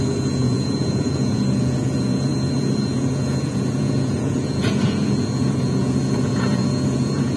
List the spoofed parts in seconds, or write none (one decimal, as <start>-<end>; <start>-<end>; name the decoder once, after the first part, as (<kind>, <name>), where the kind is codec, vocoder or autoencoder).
0.0-7.4 (vocoder, Vocos)